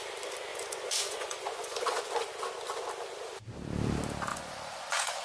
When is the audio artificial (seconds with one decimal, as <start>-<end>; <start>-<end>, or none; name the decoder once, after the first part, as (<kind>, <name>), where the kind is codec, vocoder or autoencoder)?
0.5-2.3 (vocoder, Vocos); 4.3-5.2